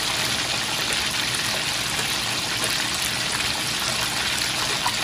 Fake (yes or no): no